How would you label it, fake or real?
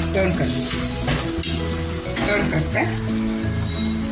real